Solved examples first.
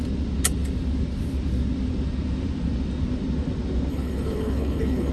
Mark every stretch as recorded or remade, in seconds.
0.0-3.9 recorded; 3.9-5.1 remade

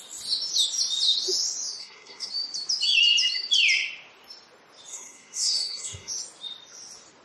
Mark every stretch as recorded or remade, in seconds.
0.0-1.8 recorded; 1.8-2.3 remade; 2.3-4.9 recorded; 4.9-6.1 remade; 6.1-7.2 recorded

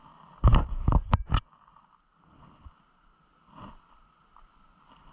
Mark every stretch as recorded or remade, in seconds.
0.0-5.1 recorded

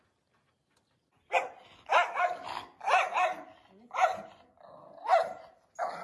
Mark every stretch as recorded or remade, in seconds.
0.0-6.0 recorded

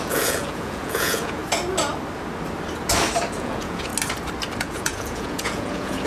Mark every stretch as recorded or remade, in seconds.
0.0-1.4 remade; 1.4-3.3 recorded; 3.3-3.9 remade; 3.9-4.6 recorded; 4.6-6.1 remade

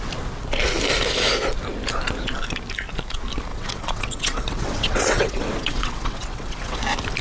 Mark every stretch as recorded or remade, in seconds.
0.0-3.5 recorded; 3.5-6.8 remade; 6.8-7.2 recorded

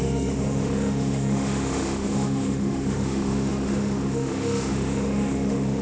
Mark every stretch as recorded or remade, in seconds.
0.0-5.8 remade